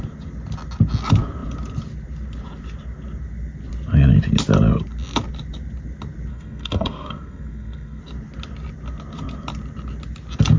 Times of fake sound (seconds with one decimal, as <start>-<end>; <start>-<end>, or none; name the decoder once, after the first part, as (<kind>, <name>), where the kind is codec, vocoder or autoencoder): 6.3-8.0 (codec, SNAC)